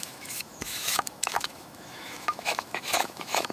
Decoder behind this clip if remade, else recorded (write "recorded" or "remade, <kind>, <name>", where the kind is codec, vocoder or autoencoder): remade, autoencoder, DAC-VAE